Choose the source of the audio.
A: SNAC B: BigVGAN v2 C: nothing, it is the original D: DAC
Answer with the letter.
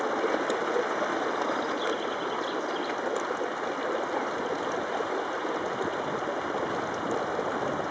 C